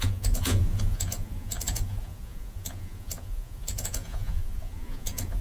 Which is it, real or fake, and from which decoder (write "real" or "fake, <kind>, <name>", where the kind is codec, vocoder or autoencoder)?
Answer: fake, vocoder, Vocos